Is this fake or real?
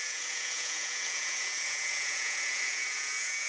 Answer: fake